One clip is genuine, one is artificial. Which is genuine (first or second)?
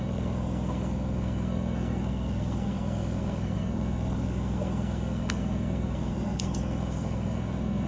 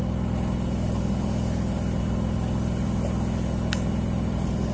second